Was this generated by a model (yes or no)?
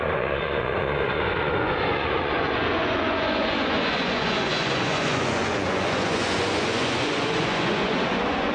yes